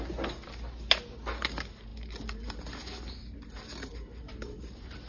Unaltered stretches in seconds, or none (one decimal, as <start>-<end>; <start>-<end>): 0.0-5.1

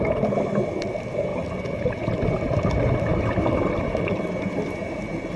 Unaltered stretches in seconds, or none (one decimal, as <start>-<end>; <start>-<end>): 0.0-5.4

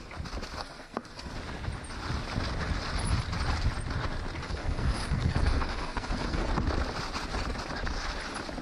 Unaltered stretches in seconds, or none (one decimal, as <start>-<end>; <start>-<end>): 0.0-0.6; 1.3-4.4; 6.5-8.6